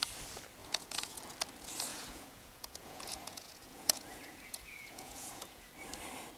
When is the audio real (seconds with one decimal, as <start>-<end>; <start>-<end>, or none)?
0.0-0.6; 1.2-1.9; 5.7-6.4